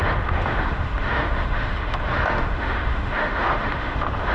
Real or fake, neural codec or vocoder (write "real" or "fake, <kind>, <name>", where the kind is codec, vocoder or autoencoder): fake, autoencoder, DAC-VAE